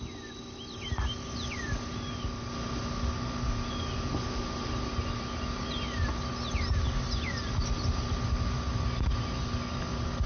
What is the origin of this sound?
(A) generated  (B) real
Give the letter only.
B